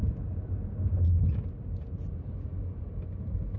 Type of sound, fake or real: real